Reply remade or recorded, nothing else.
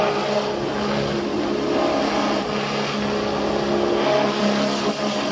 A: recorded